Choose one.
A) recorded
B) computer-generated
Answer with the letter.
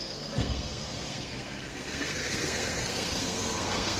B